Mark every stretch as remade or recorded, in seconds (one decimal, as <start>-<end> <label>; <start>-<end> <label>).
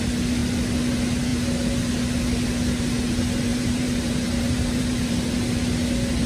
0.0-3.5 recorded; 3.5-5.1 remade; 5.1-6.3 recorded